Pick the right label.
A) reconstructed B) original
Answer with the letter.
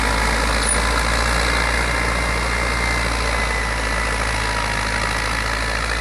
B